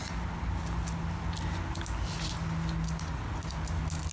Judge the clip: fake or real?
real